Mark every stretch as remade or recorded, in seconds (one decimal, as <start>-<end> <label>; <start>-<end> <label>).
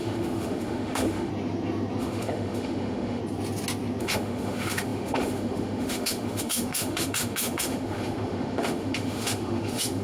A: 0.0-1.3 remade; 1.3-2.0 recorded; 2.0-3.2 remade; 3.2-4.0 recorded; 4.0-10.0 remade